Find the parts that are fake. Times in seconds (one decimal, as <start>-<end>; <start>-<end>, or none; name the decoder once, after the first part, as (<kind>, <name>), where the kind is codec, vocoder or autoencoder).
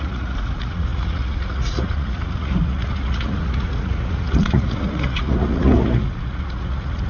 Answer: 0.0-7.1 (vocoder, Vocos)